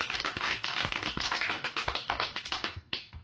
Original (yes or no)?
no